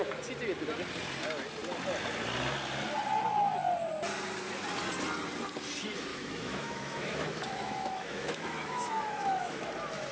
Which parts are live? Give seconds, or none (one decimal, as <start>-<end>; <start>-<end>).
0.0-6.1; 9.7-10.1